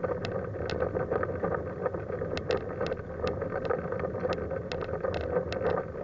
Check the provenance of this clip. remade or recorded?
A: recorded